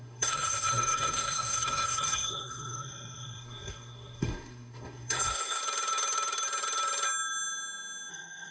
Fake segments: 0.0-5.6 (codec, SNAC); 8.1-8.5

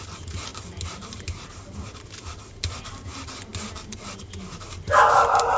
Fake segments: none

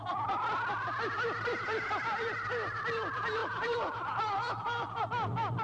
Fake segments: 3.4-5.0 (vocoder, BigVGAN v2)

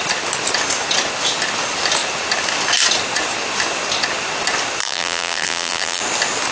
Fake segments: 4.8-6.0 (vocoder, BigVGAN v2)

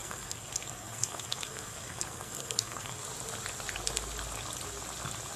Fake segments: 0.0-3.0 (codec, SNAC)

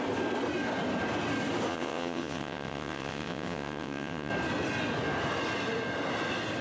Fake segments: 1.7-4.3 (vocoder, WaveNeXt)

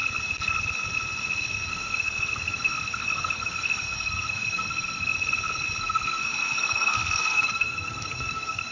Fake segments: 1.7-5.1 (codec, SNAC); 5.8-8.7